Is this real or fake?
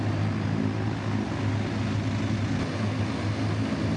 real